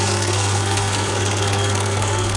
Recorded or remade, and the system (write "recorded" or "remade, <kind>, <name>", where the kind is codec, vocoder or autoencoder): remade, codec, SNAC